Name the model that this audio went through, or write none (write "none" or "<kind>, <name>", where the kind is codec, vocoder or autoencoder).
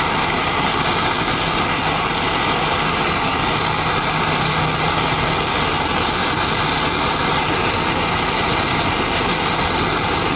none